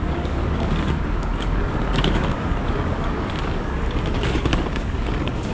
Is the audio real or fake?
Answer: fake